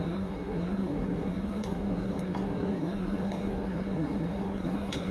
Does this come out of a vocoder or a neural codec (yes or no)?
yes